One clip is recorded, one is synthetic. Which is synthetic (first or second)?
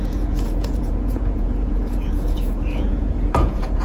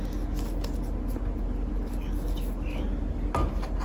first